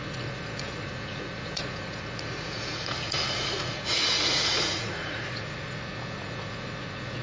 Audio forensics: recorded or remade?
remade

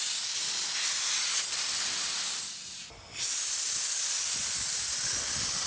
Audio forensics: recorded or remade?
recorded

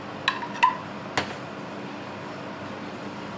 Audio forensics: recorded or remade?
recorded